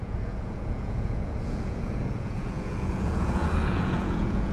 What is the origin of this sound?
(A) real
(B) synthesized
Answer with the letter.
B